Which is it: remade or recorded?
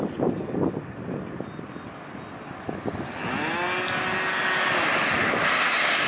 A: recorded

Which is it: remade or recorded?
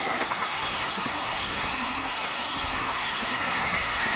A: remade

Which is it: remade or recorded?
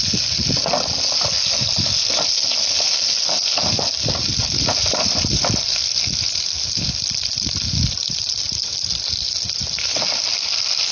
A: recorded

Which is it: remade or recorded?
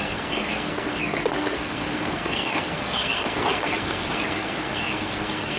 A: remade